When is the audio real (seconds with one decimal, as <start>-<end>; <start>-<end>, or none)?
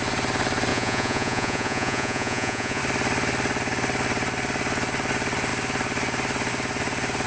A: 0.0-0.7; 2.8-7.3